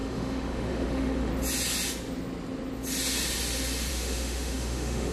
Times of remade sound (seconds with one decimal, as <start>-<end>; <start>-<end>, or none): 0.0-1.3; 3.9-5.1